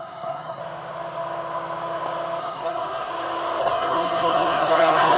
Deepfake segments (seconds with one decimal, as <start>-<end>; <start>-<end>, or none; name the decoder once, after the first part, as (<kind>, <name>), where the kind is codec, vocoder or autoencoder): 0.0-0.6 (codec, SNAC); 2.4-3.1; 3.6-5.2